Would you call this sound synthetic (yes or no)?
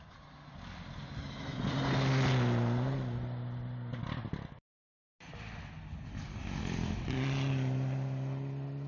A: no